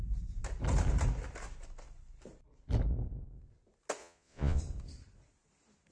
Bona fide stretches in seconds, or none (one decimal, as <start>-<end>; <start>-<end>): 0.0-4.0; 4.6-5.9

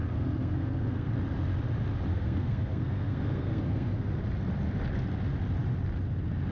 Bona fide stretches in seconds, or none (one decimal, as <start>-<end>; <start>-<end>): 1.1-2.1; 4.2-6.5

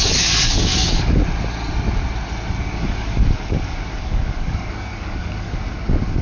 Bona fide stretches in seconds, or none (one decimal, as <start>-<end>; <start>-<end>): 1.2-2.6

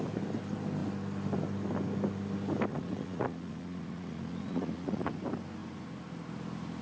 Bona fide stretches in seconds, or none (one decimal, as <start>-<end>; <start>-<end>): 0.0-2.7; 5.1-6.8

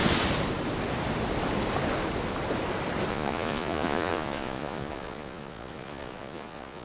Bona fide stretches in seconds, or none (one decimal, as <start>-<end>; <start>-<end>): 0.0-3.1